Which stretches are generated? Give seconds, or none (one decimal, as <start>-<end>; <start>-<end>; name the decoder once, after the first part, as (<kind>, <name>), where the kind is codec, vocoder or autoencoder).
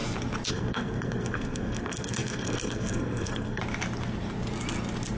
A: 0.5-3.6 (codec, SNAC)